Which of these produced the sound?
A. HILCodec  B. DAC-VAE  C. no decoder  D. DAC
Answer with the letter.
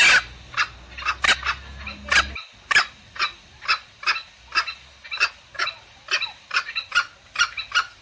C